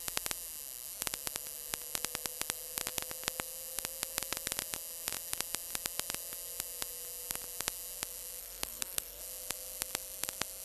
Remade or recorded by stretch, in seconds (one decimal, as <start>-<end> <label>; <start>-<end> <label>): 0.0-8.4 recorded; 8.4-9.2 remade; 9.2-10.6 recorded